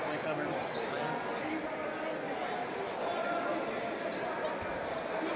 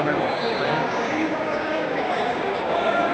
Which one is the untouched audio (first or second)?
first